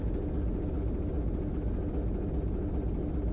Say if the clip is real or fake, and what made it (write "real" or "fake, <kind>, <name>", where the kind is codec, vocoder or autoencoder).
real